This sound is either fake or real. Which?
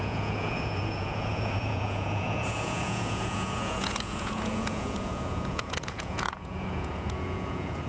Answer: fake